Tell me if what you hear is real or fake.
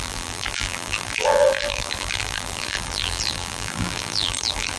fake